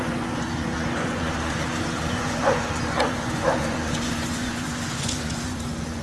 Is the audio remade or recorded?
remade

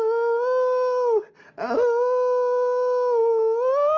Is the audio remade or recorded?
recorded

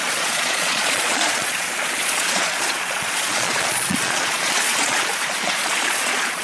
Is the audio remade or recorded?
remade